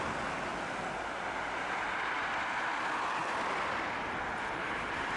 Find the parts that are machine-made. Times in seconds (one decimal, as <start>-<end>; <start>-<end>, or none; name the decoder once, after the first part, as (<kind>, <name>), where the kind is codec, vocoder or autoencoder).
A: none

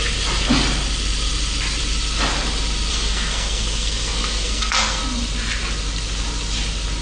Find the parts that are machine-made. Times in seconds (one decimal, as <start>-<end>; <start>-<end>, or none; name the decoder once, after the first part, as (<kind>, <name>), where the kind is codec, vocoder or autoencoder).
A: 2.9-5.0 (codec, SNAC)

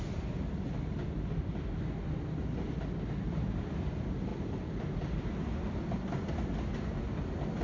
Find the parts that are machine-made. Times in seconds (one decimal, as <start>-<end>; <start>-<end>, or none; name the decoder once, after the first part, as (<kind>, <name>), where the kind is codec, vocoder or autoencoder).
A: none

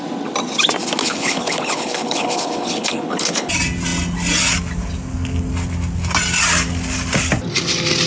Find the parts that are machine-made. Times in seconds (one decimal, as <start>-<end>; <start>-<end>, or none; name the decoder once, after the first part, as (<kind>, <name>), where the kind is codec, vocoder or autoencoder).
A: 1.0-3.5 (codec, HILCodec)

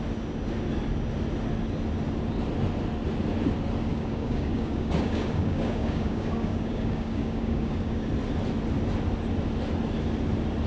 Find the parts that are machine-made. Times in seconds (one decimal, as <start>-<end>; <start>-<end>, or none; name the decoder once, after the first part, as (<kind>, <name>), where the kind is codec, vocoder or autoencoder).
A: 3.9-8.1 (codec, DAC)